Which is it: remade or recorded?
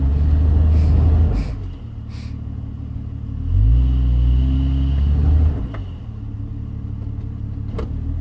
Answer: recorded